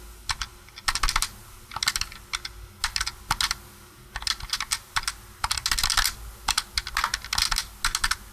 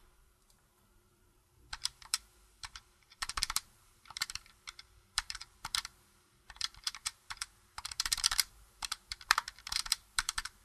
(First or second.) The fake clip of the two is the second